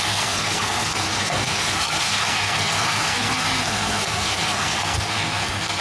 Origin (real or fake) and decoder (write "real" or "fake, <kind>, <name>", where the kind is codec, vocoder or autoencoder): fake, codec, SNAC